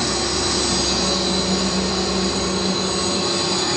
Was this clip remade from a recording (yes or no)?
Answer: no